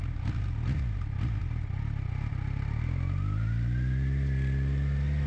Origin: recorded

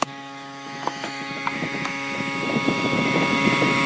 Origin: remade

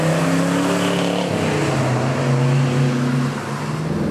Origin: recorded